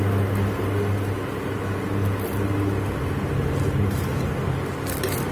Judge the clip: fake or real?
real